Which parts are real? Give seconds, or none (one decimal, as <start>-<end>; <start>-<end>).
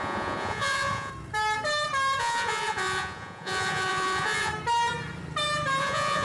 1.1-2.2; 4.5-5.8